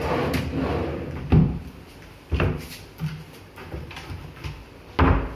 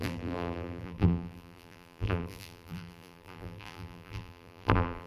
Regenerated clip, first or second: second